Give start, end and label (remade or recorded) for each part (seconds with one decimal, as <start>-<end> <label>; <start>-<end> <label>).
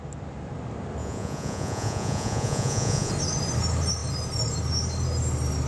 0.0-1.0 recorded; 1.0-3.1 remade; 3.1-5.7 recorded